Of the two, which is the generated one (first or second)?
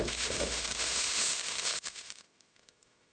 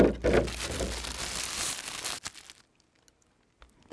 first